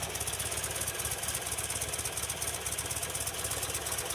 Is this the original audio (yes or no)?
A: yes